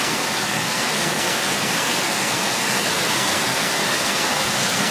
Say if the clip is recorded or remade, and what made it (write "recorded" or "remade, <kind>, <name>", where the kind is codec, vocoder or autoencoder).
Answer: remade, codec, SNAC